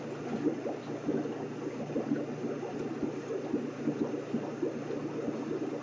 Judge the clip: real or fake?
real